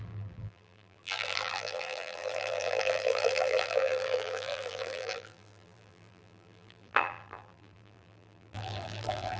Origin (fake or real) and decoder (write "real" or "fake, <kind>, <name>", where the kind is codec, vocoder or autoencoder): fake, vocoder, BigVGAN v2